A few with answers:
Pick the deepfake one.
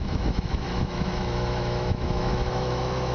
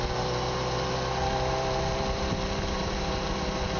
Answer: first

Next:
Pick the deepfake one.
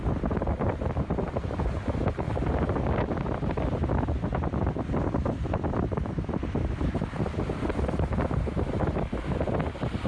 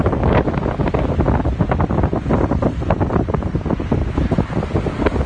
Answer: first